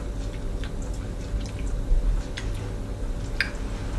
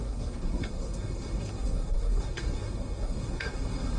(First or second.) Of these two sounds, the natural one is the first